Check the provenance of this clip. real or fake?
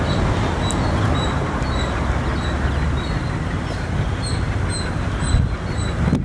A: real